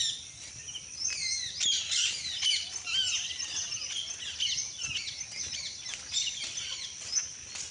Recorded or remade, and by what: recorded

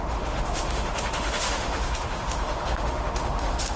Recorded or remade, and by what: remade, autoencoder, DAC-VAE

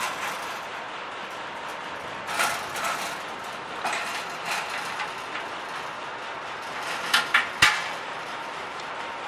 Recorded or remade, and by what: recorded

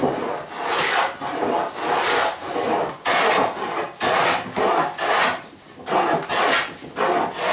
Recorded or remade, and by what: recorded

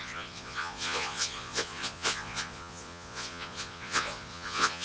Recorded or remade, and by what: remade, vocoder, Vocos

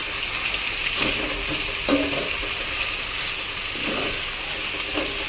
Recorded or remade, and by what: recorded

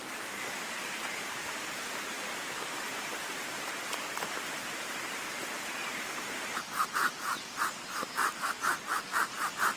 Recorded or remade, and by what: remade, vocoder, BigVGAN v2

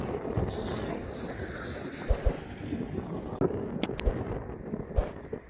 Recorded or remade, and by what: recorded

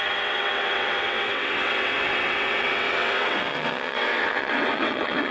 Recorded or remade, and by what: remade, vocoder, WaveNeXt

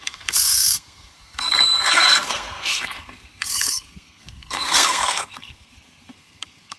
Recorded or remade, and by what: remade, codec, SNAC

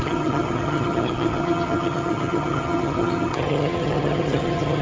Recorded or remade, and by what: remade, vocoder, HiFi-GAN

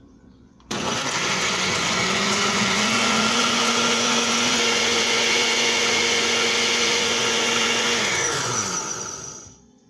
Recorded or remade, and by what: remade, vocoder, Vocos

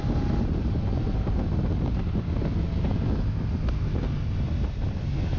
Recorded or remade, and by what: recorded